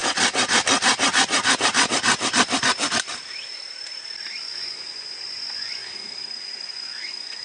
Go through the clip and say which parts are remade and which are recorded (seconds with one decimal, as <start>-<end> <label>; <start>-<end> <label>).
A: 0.0-4.4 recorded; 4.4-5.8 remade; 5.8-6.4 recorded; 6.4-7.4 remade